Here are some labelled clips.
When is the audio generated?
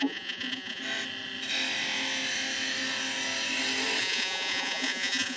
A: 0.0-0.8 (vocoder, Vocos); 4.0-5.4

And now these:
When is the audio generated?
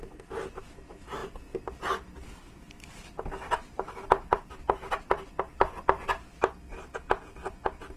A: 1.2-6.0 (vocoder, BigVGAN v2)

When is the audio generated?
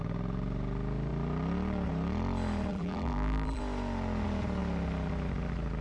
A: 2.7-3.6 (vocoder, BigVGAN v2)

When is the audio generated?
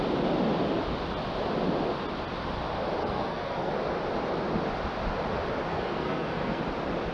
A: 3.0-3.7 (codec, SNAC); 5.7-6.6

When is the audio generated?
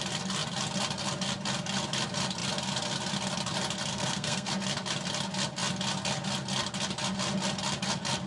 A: 3.9-4.5 (codec, SNAC)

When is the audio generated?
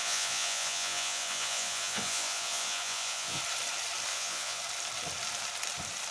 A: 0.0-3.4 (vocoder, Vocos); 4.1-4.6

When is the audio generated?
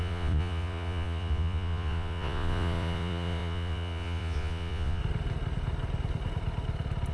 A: 0.0-5.0 (vocoder, Vocos)